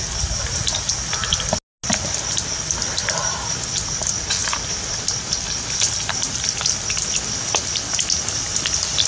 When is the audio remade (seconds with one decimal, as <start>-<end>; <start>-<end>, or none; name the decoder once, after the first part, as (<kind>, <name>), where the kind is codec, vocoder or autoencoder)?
none